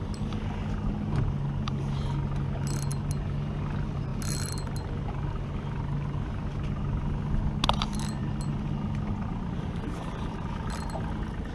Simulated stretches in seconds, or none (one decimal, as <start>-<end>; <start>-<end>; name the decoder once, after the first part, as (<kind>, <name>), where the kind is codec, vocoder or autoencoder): none